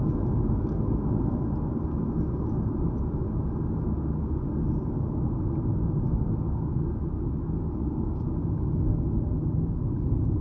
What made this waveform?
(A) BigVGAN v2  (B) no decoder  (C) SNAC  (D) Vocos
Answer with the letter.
B